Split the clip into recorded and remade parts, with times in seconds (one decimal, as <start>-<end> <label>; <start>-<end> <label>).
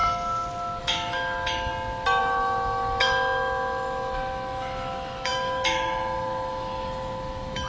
0.0-0.8 recorded; 0.8-1.7 remade; 1.7-2.2 recorded; 2.2-7.7 remade